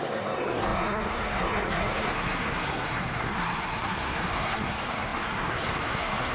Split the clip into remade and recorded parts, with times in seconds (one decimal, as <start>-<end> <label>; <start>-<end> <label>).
0.0-6.3 remade

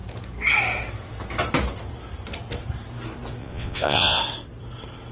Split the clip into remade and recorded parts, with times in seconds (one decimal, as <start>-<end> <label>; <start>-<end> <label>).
0.0-3.4 recorded; 3.4-4.2 remade; 4.2-5.1 recorded

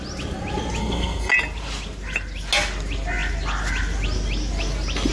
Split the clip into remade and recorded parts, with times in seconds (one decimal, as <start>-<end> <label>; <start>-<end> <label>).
0.0-0.8 recorded; 0.8-1.3 remade; 1.3-5.1 recorded

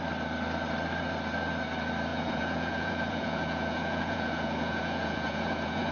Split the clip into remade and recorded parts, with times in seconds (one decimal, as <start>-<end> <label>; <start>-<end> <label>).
0.0-2.1 recorded; 2.1-5.9 remade

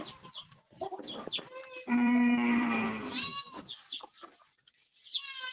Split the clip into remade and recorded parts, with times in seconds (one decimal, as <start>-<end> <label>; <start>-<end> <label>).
0.0-0.4 recorded; 0.4-3.7 remade; 3.7-5.5 recorded

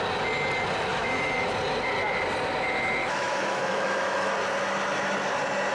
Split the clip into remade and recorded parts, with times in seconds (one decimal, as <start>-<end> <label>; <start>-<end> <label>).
0.0-0.9 recorded; 0.9-1.5 remade; 1.5-3.0 recorded; 3.0-4.3 remade; 4.3-5.7 recorded

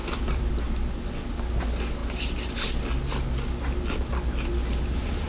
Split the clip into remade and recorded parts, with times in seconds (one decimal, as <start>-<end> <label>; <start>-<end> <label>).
0.0-0.5 remade; 0.5-5.3 recorded

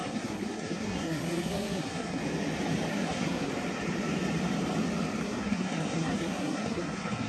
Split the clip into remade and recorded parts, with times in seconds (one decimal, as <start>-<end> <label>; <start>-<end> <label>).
0.0-2.2 remade; 2.2-2.9 recorded; 2.9-3.5 remade; 3.5-5.2 recorded; 5.2-7.3 remade